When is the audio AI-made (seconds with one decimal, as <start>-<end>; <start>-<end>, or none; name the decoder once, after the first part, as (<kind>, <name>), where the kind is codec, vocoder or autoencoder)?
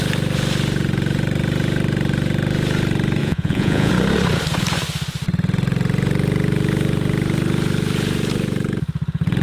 3.2-3.9 (vocoder, Vocos)